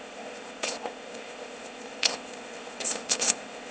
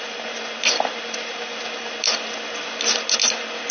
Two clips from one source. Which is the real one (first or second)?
second